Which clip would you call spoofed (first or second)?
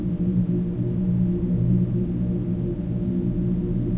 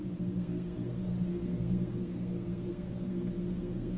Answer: second